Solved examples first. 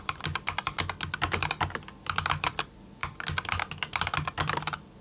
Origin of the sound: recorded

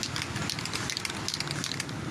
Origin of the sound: recorded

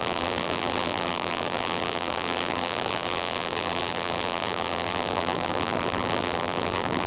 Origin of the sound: remade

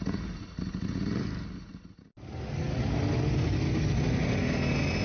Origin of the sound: recorded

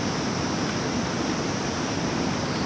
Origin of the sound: recorded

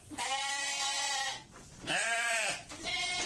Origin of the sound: remade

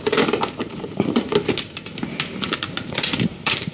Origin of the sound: recorded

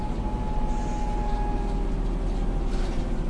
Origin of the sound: recorded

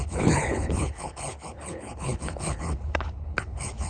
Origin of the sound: remade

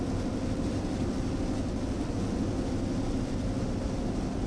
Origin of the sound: recorded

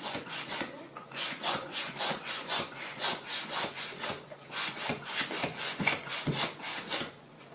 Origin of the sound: remade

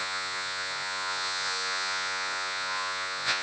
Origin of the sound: remade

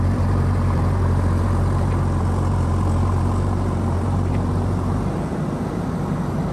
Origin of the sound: remade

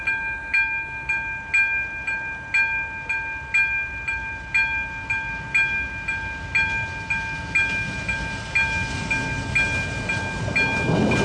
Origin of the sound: recorded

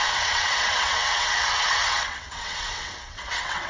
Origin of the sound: remade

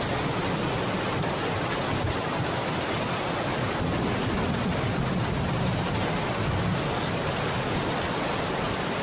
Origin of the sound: recorded